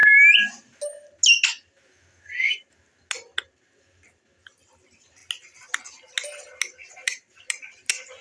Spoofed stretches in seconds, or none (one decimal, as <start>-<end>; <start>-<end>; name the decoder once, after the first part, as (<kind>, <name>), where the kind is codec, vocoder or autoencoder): 6.8-7.4 (vocoder, BigVGAN v2)